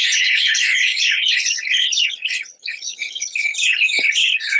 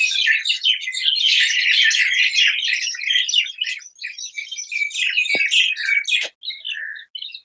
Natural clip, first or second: second